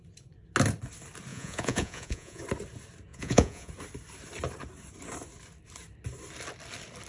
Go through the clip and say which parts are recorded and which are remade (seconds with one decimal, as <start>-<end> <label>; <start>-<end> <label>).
0.0-1.3 recorded; 1.3-2.4 remade; 2.4-3.1 recorded; 3.1-3.7 remade; 3.7-7.1 recorded